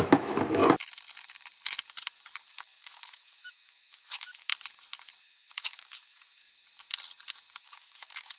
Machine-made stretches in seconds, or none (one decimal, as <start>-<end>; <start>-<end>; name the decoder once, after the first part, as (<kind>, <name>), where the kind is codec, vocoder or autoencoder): 0.0-0.6 (autoencoder, DAC-VAE); 2.5-4.5; 5.2-6.4; 7.6-8.4